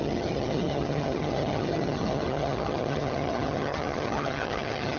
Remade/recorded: remade